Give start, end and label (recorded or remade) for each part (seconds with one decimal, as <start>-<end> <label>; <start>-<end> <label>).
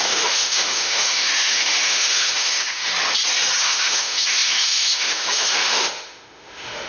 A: 0.0-2.9 remade; 2.9-3.6 recorded; 3.6-6.9 remade